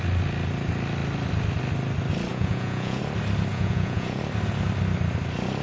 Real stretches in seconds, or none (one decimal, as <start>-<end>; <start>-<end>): 0.0-2.3; 3.0-3.5; 4.2-5.6